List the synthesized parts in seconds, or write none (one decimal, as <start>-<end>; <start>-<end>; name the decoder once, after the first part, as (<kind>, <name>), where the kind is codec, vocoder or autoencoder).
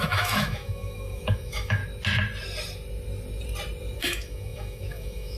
0.0-1.8 (autoencoder, DAC-VAE); 4.0-5.4